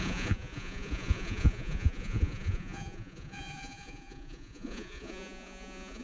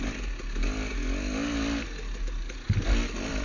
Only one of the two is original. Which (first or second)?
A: second